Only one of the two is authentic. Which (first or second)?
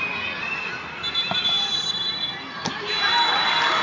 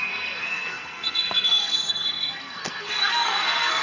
first